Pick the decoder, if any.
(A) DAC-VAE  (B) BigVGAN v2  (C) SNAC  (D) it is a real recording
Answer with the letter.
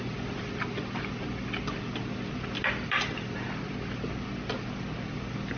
D